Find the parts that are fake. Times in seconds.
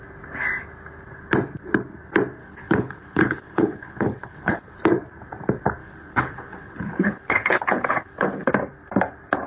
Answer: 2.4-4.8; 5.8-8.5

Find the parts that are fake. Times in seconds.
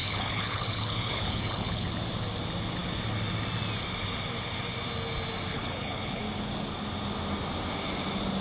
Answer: 0.0-1.9; 5.5-6.2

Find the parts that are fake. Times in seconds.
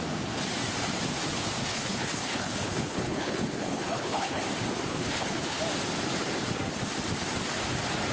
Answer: 1.6-4.4; 4.9-5.6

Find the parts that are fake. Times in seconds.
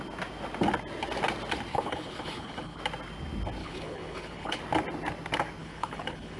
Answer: 1.7-2.8; 3.6-4.6; 5.6-6.4